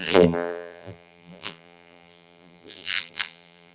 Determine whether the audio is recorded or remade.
remade